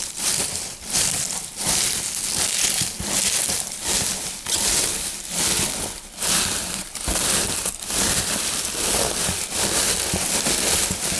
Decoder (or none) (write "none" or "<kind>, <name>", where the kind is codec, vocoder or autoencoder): none